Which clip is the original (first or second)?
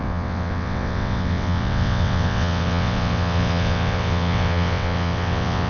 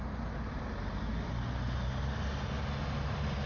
second